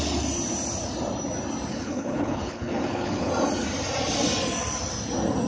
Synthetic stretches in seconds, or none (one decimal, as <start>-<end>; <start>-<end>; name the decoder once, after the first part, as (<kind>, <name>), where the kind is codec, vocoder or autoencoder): 1.7-3.3 (codec, HILCodec)